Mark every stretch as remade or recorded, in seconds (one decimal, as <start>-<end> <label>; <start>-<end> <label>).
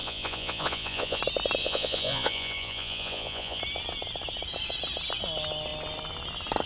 0.0-1.2 remade; 1.2-1.6 recorded; 1.6-3.6 remade; 3.6-6.7 recorded